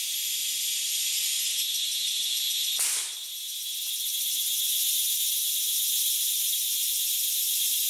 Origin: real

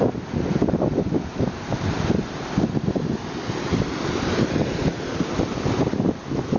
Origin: real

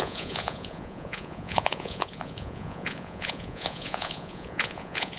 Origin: fake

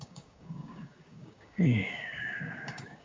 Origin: fake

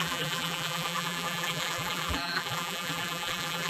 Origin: fake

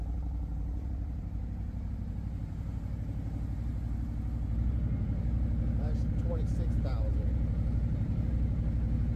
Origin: fake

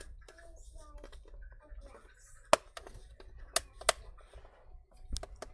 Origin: real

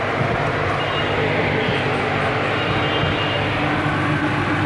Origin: real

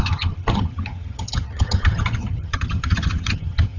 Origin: fake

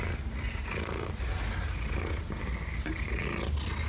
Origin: real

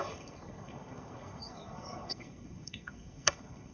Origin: fake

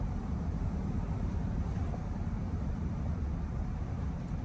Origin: real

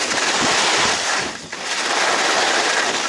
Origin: real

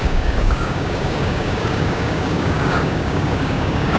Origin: fake